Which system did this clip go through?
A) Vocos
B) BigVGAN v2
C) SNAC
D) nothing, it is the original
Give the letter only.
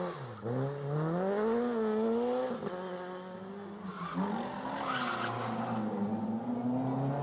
D